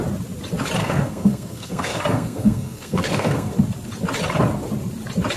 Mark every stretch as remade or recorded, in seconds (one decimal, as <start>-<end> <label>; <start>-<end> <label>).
0.0-0.8 recorded; 0.8-3.6 remade; 3.6-5.4 recorded